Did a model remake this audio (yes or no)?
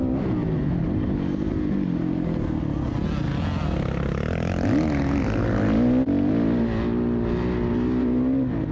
no